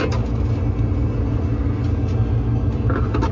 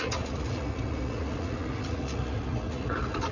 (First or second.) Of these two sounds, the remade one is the second